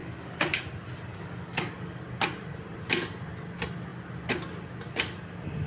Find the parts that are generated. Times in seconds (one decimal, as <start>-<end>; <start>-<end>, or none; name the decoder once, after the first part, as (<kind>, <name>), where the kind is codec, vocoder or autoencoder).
0.0-0.6 (codec, DAC); 1.1-2.0